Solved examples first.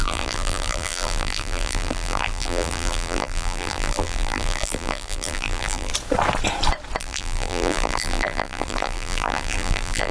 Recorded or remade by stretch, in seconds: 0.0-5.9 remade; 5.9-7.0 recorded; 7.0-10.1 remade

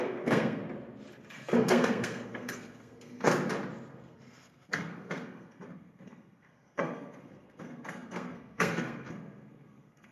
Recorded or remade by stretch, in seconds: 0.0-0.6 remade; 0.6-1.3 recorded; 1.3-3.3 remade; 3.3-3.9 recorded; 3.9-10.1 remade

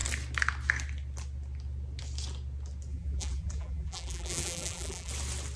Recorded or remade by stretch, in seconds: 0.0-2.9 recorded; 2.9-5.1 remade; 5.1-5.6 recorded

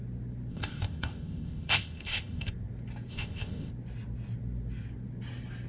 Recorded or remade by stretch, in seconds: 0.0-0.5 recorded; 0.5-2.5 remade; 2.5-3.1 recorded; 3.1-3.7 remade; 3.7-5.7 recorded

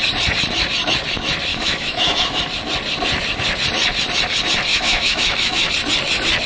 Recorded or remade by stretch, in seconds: 0.0-1.5 recorded; 1.5-2.4 remade; 2.4-4.7 recorded; 4.7-5.7 remade; 5.7-6.5 recorded

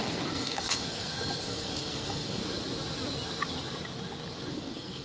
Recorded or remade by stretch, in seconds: 0.0-2.4 remade; 2.4-4.5 recorded; 4.5-5.0 remade